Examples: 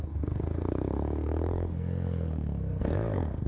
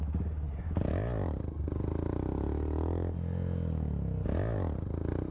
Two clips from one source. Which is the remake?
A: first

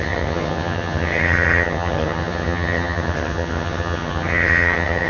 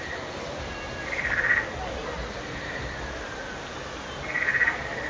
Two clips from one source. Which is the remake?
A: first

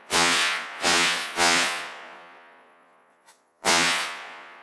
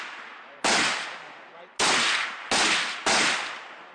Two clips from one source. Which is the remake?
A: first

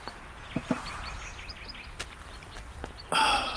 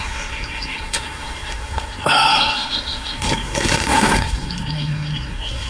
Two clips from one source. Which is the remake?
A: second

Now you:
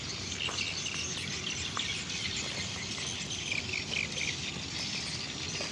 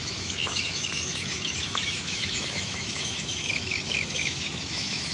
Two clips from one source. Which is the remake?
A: second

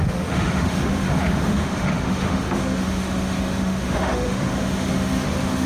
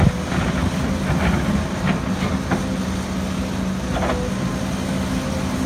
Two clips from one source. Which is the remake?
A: first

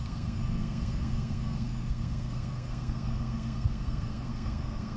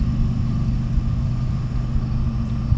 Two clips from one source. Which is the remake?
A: first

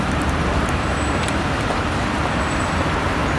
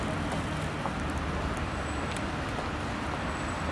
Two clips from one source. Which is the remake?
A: first